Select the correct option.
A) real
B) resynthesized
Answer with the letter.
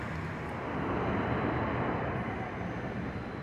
A